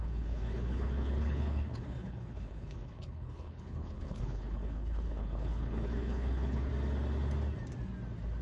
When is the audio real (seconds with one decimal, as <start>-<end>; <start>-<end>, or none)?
6.7-8.4